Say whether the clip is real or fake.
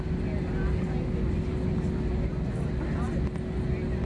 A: real